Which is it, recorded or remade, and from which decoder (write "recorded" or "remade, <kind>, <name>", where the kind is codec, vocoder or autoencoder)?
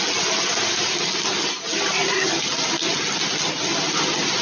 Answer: recorded